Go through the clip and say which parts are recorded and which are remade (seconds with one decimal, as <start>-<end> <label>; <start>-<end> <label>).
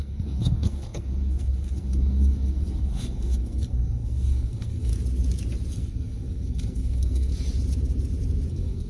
0.0-4.9 remade; 4.9-5.7 recorded; 5.7-7.3 remade; 7.3-8.5 recorded; 8.5-8.9 remade